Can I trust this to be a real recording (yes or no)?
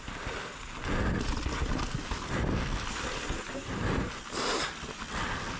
yes